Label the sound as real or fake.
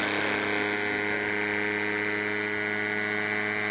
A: real